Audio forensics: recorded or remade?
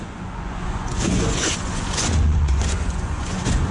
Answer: remade